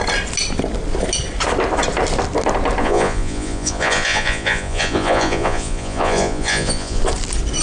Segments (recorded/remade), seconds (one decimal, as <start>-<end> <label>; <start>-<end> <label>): 0.0-2.8 recorded; 2.8-7.0 remade; 7.0-7.6 recorded